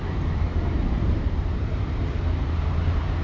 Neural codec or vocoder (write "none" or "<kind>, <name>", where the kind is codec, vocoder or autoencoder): vocoder, BigVGAN v2